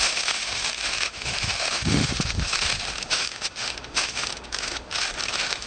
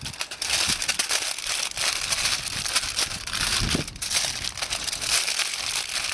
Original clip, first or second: second